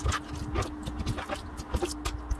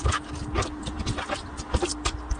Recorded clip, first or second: first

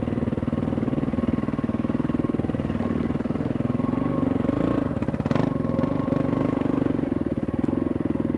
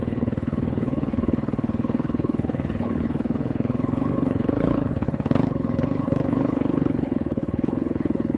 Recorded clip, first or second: first